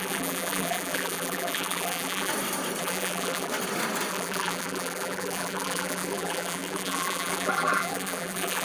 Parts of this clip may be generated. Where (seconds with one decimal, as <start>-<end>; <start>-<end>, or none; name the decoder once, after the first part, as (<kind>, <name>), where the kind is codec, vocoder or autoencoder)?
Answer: 0.0-2.3 (vocoder, BigVGAN v2); 2.8-3.5; 4.1-8.6